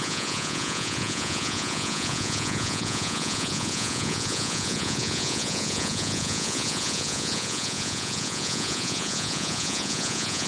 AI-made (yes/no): yes